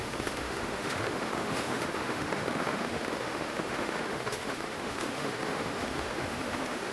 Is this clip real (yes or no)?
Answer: no